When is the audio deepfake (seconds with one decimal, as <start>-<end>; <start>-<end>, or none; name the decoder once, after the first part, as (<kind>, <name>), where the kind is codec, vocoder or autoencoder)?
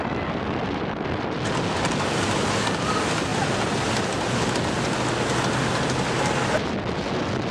none